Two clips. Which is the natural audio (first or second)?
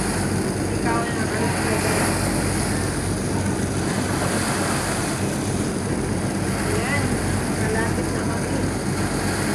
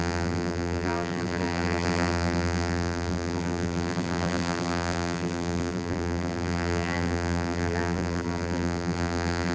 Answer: first